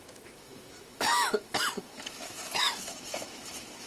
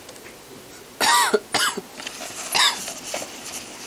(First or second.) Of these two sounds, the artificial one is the first